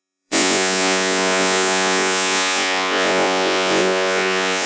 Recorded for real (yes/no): no